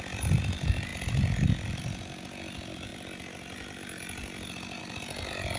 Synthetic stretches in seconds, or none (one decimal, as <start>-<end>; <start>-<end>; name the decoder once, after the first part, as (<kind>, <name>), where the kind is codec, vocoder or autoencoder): none